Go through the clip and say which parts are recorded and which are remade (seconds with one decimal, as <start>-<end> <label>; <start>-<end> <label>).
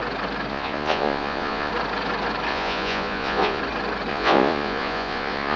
0.0-0.5 recorded; 0.5-1.7 remade; 1.7-2.5 recorded; 2.5-3.6 remade; 3.6-4.1 recorded; 4.1-5.6 remade